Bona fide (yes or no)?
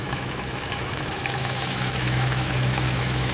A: no